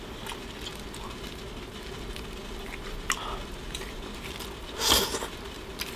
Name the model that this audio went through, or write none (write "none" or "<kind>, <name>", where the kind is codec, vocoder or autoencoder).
none